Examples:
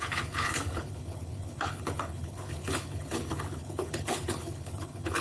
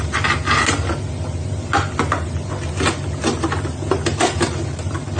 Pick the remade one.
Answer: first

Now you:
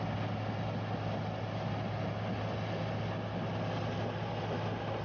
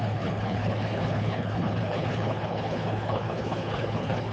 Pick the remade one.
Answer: second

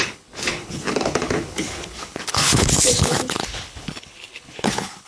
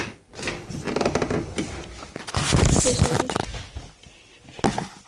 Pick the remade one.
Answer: first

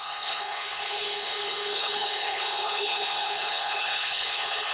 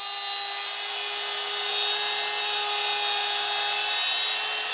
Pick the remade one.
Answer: first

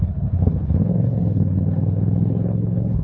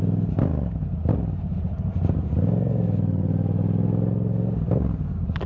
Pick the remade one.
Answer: first